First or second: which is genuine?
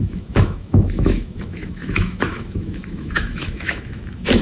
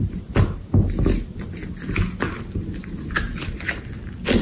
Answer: second